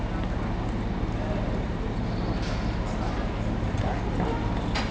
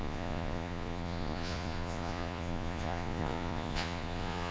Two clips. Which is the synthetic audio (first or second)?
second